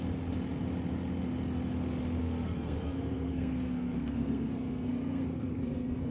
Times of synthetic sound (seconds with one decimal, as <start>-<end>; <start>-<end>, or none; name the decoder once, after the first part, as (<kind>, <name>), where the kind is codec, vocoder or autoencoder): 2.2-6.1 (codec, SNAC)